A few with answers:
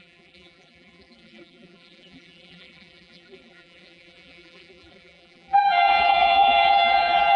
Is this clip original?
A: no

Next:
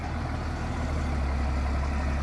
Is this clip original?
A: yes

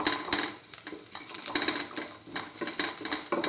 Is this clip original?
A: no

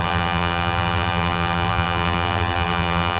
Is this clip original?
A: no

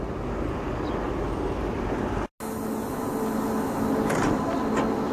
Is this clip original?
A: yes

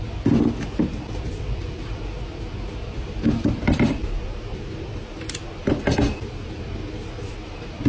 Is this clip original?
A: no